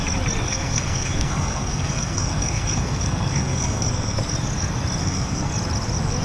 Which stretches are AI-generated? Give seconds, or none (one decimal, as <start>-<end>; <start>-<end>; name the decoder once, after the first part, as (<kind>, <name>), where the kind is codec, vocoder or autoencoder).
0.5-4.2 (codec, SNAC); 5.0-5.5